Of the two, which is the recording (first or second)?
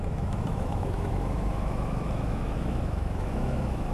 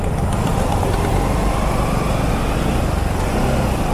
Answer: second